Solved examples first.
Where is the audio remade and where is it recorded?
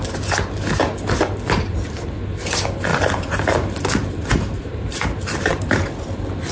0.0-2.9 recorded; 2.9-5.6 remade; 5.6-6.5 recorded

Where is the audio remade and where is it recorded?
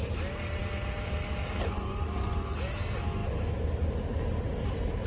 0.0-5.1 recorded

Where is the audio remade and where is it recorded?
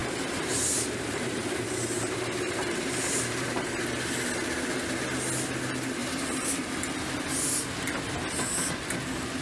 0.0-3.8 remade; 3.8-6.0 recorded; 6.0-6.7 remade; 6.7-9.4 recorded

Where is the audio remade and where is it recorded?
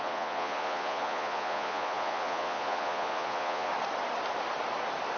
0.0-3.7 remade; 3.7-5.2 recorded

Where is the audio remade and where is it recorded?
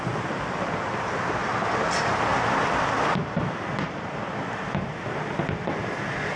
0.0-6.4 recorded